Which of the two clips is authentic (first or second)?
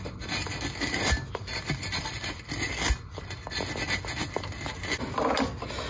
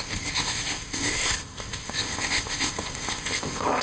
first